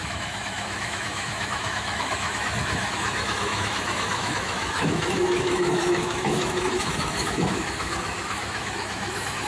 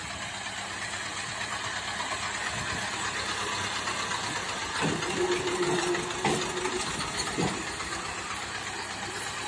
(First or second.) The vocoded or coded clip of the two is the first